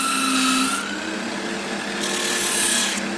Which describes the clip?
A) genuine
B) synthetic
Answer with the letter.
A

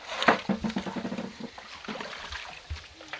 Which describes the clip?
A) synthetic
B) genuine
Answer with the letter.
B